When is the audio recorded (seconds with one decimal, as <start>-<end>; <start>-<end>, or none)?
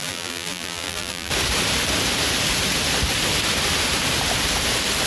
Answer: 1.3-5.1